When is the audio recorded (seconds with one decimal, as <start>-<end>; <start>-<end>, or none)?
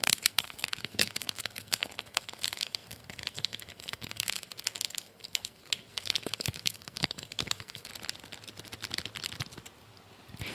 7.9-10.5